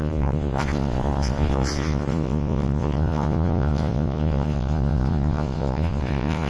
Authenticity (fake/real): fake